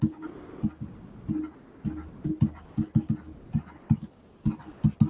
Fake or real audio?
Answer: real